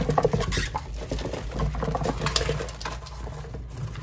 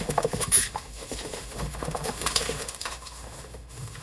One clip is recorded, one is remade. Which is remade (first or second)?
second